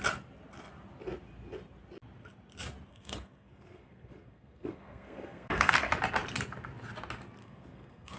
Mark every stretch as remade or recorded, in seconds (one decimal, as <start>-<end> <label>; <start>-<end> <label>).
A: 0.0-2.9 recorded; 2.9-5.9 remade; 5.9-7.4 recorded; 7.4-8.2 remade